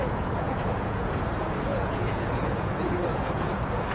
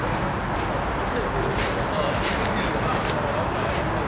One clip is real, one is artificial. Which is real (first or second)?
second